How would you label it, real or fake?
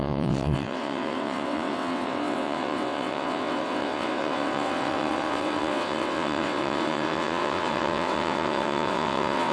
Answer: fake